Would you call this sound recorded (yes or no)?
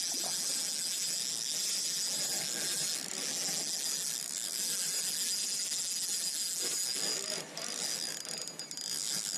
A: yes